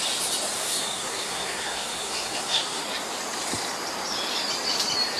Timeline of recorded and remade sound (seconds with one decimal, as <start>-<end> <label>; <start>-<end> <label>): 0.0-0.6 recorded; 0.6-2.8 remade; 2.8-5.2 recorded